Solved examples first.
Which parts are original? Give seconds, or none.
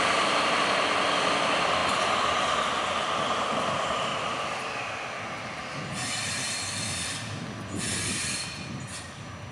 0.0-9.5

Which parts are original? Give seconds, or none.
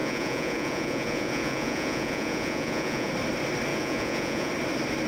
3.1-3.7; 4.5-5.1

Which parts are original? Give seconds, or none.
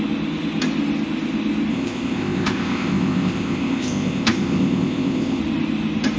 0.0-1.7; 5.4-6.2